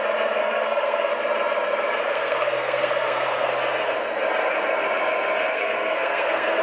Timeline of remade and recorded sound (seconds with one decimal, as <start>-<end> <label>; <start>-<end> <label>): 0.0-0.4 recorded; 0.4-1.1 remade; 1.1-2.0 recorded; 2.0-3.5 remade; 3.5-5.5 recorded; 5.5-6.6 remade

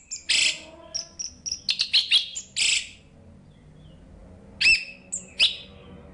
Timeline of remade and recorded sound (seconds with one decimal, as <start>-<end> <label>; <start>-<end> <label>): 0.0-6.1 recorded

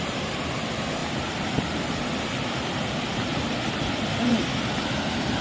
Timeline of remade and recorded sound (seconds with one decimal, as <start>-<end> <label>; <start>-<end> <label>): 0.0-1.0 remade; 1.0-4.2 recorded; 4.2-5.4 remade